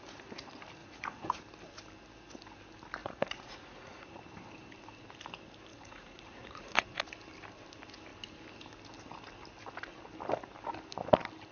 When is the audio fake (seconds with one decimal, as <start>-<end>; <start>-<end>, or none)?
0.8-1.4; 3.0-4.2; 5.7-7.0